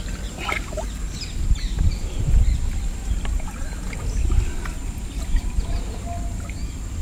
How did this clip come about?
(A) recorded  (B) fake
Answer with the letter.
A